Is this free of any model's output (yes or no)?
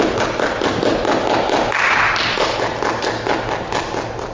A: yes